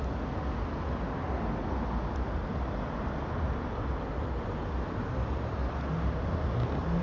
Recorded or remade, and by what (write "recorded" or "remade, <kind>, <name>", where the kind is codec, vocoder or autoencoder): recorded